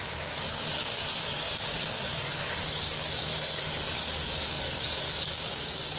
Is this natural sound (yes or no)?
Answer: no